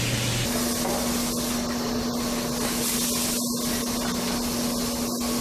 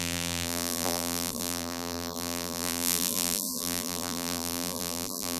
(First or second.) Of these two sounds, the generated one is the second